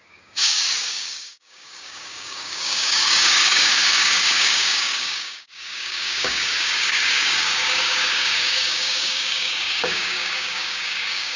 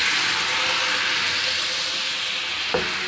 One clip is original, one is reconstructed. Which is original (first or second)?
second